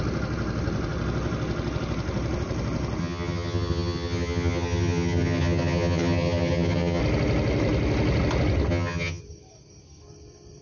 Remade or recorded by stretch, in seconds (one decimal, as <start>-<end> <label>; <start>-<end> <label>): 0.0-3.0 recorded; 3.0-7.0 remade; 7.0-8.7 recorded; 8.7-9.2 remade; 9.2-10.6 recorded